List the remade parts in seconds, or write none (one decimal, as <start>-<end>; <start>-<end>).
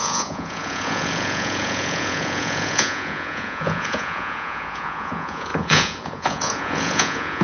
0.0-7.4